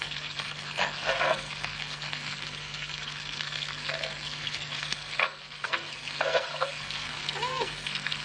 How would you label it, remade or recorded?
remade